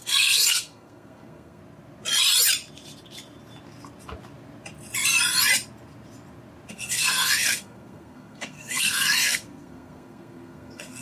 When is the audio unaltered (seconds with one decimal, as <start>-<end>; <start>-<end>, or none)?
1.6-6.7